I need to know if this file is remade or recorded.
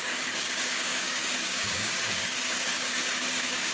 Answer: remade